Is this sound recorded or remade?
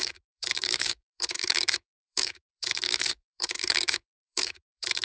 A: remade